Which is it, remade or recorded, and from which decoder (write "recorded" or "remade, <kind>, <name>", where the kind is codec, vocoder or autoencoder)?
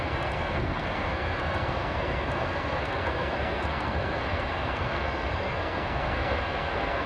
remade, codec, SNAC